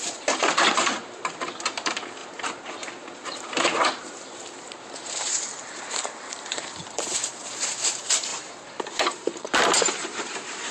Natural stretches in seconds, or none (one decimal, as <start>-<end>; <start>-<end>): none